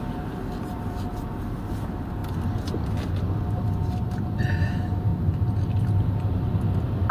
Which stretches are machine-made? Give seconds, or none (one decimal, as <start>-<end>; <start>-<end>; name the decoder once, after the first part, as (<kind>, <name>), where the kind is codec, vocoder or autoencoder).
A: none